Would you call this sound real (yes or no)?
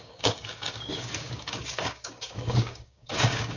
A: no